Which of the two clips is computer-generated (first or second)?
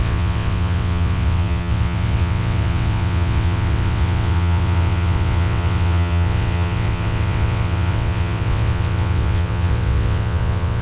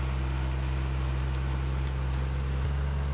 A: first